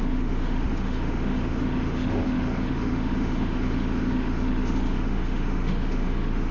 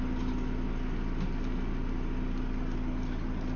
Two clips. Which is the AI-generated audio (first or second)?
first